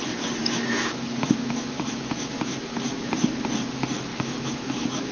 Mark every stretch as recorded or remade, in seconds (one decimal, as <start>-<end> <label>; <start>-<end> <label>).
0.0-0.4 recorded; 0.4-3.1 remade; 3.1-4.1 recorded; 4.1-5.1 remade